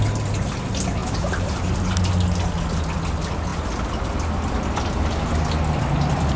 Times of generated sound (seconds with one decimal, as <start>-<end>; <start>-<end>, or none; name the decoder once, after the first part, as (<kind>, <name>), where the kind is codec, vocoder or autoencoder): 1.0-1.9 (vocoder, BigVGAN v2)